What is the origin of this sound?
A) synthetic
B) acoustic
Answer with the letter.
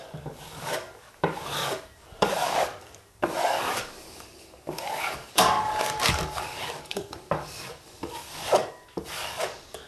A